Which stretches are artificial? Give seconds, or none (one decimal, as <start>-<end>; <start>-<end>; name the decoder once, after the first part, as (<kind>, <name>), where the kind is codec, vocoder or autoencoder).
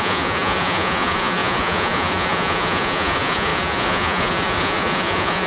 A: 0.0-5.5 (vocoder, Vocos)